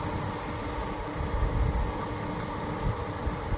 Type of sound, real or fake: real